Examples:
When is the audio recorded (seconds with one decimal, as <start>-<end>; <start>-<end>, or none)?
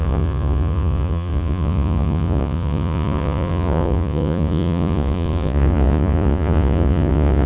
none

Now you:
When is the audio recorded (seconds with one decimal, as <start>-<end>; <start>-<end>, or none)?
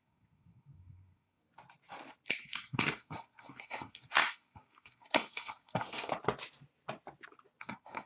1.4-2.4; 6.1-7.6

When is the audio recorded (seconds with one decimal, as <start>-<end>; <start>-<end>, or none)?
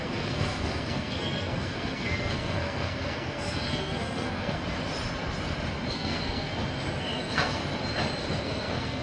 4.6-5.9; 6.5-7.0; 7.6-8.4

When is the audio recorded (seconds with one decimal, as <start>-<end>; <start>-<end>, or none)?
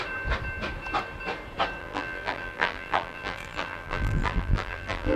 0.0-1.8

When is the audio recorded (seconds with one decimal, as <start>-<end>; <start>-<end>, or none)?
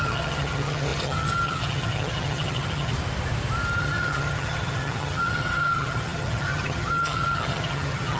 2.9-3.8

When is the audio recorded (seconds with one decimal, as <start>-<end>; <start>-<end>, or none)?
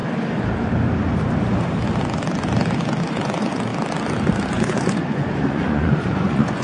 0.0-3.1; 3.7-4.5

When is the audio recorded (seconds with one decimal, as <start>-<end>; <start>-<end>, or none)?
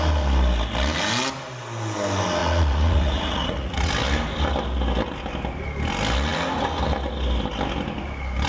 0.0-2.4; 3.9-8.5